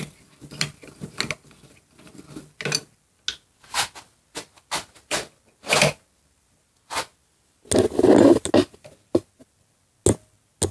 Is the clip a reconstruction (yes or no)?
no